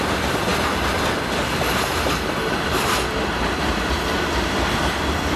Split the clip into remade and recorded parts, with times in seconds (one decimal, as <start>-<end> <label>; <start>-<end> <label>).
0.0-5.4 recorded

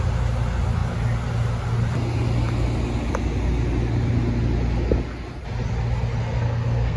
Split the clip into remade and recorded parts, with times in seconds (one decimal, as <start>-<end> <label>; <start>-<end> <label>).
0.0-6.2 recorded; 6.2-7.0 remade

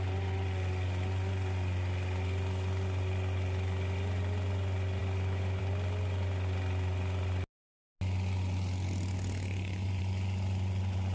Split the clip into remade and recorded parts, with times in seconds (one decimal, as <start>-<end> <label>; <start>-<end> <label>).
0.0-11.1 recorded

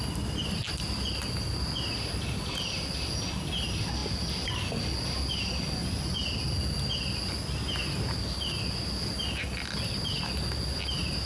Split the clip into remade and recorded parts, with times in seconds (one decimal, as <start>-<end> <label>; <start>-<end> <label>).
0.0-11.3 recorded

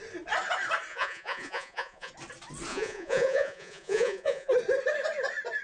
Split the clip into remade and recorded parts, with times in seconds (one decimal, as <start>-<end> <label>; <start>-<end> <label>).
0.0-0.9 recorded; 0.9-2.1 remade; 2.1-2.7 recorded; 2.7-4.5 remade; 4.5-5.6 recorded

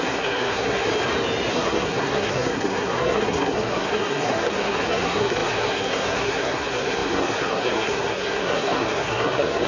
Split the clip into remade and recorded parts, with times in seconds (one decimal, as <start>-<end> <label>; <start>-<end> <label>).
0.0-0.9 remade; 0.9-1.5 recorded; 1.5-9.7 remade

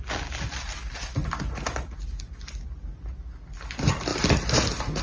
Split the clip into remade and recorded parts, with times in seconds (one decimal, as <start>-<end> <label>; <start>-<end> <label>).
0.0-5.0 recorded

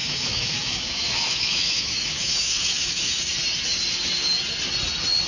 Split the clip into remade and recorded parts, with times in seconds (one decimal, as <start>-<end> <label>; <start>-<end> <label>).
0.0-3.2 remade; 3.2-5.3 recorded